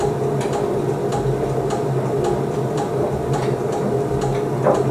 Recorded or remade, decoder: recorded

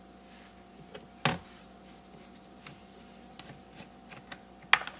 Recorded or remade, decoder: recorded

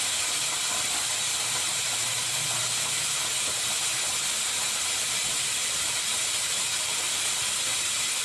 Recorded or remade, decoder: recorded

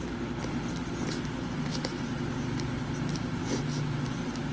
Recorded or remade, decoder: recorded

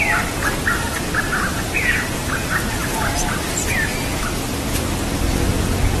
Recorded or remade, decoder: recorded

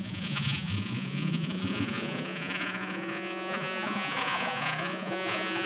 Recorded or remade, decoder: remade, vocoder, Vocos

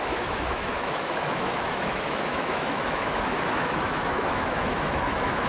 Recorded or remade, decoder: remade, autoencoder, DAC-VAE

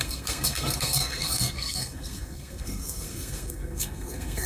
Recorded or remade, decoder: remade, codec, SNAC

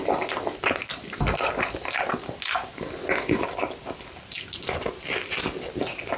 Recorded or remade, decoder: recorded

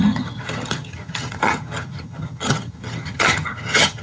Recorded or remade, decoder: remade, vocoder, HiFi-GAN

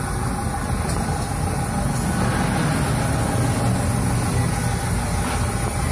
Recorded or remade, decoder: recorded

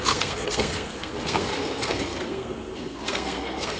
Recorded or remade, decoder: remade, codec, SNAC